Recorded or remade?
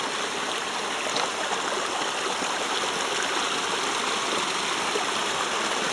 recorded